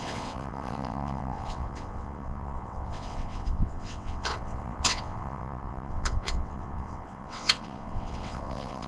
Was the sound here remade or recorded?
remade